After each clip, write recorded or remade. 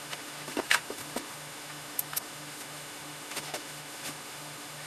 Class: remade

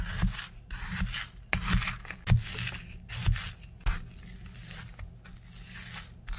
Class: recorded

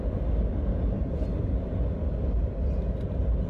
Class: recorded